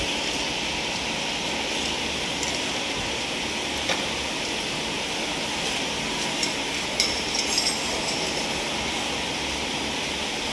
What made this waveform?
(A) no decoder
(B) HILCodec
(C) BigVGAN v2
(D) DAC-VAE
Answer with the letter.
A